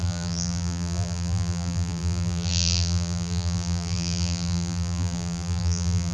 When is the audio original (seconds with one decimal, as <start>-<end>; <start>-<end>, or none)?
none